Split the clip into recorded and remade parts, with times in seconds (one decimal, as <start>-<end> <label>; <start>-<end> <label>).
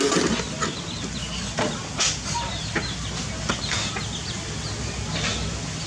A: 0.0-5.9 recorded